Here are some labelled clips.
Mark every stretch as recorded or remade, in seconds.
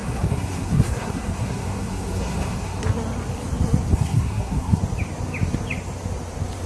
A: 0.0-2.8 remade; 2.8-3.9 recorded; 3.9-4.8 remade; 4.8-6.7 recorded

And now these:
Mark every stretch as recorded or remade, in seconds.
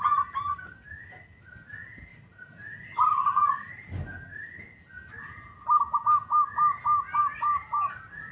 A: 0.0-2.1 recorded; 2.1-4.6 remade; 4.6-8.3 recorded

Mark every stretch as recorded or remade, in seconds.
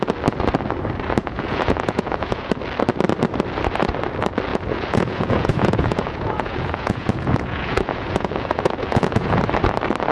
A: 0.0-1.2 recorded; 1.2-2.5 remade; 2.5-4.5 recorded; 4.5-9.4 remade; 9.4-10.1 recorded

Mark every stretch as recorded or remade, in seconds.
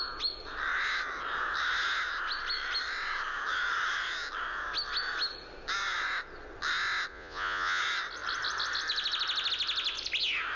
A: 0.0-7.1 recorded; 7.1-7.8 remade; 7.8-10.6 recorded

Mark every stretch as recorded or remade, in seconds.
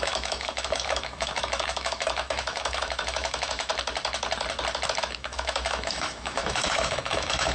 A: 0.0-3.7 remade; 3.7-5.0 recorded; 5.0-7.5 remade